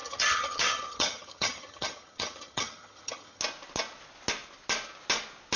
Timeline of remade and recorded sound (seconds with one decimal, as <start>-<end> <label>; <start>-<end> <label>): 0.0-3.4 remade; 3.4-5.6 recorded